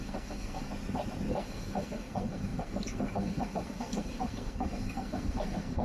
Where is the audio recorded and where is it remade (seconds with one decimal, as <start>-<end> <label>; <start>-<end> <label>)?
0.0-0.7 remade; 0.7-1.3 recorded; 1.3-5.8 remade